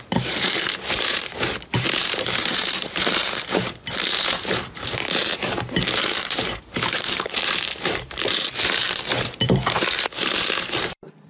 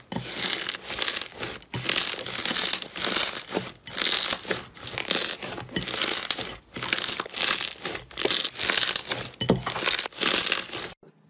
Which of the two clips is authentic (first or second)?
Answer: second